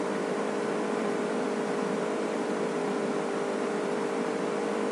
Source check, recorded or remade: remade